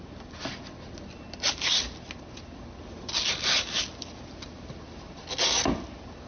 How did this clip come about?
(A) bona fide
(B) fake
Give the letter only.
A